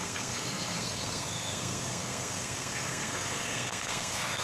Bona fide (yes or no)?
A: no